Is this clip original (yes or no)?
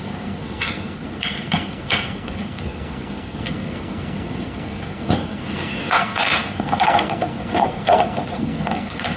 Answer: no